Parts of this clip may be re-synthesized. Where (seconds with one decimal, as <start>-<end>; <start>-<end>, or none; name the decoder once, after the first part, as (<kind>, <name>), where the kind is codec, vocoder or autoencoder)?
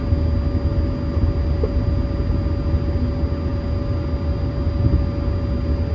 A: none